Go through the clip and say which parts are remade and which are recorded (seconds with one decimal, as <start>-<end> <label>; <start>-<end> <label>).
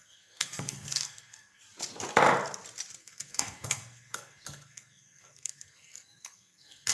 0.0-1.6 remade; 1.6-3.0 recorded; 3.0-6.9 remade